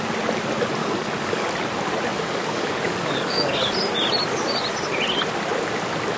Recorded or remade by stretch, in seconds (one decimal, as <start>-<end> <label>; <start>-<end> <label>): 0.0-0.8 recorded; 0.8-1.5 remade; 1.5-2.1 recorded; 2.1-3.7 remade; 3.7-6.2 recorded